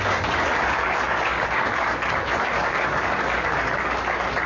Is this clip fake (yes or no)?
yes